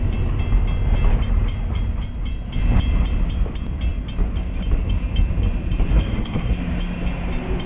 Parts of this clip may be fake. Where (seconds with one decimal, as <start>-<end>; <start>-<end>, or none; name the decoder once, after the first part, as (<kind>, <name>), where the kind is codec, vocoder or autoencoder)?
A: 5.9-6.5 (codec, SNAC)